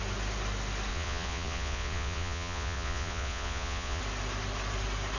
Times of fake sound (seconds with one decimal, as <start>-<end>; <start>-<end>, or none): 0.9-4.0